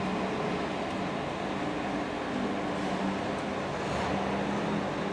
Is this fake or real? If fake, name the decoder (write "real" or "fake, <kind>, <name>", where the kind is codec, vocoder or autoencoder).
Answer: real